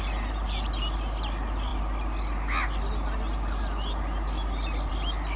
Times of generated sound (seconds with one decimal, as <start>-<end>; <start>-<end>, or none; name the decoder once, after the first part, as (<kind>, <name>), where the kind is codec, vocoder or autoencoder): none